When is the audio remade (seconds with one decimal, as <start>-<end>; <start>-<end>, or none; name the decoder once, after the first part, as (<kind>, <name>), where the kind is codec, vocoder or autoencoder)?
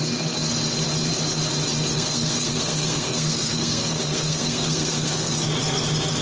1.9-5.3 (codec, SNAC)